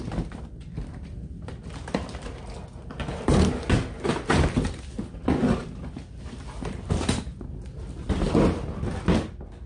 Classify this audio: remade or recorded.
recorded